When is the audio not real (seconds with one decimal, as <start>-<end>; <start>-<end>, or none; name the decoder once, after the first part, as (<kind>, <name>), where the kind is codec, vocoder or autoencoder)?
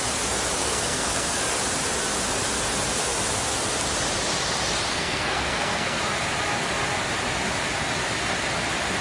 0.6-1.4 (codec, SNAC); 4.9-6.0